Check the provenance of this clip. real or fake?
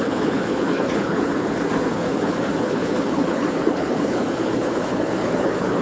fake